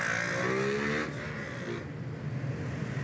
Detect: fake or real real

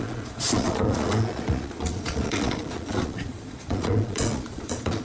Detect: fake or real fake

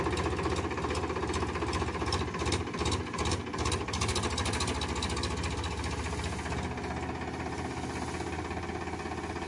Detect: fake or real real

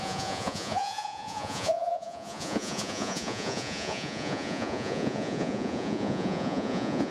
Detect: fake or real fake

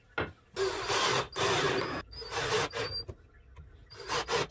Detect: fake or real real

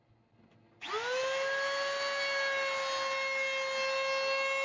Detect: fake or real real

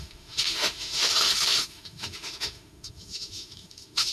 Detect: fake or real fake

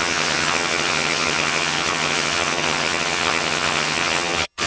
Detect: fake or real fake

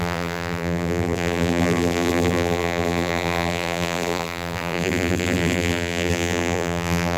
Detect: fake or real fake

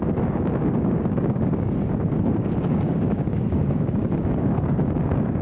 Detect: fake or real fake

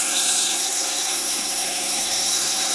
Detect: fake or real fake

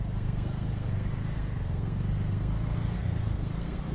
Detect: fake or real fake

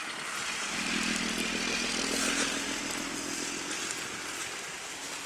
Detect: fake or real real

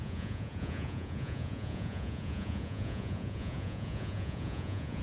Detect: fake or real fake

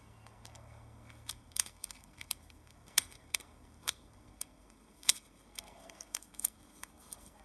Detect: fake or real fake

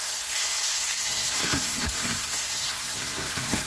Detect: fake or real fake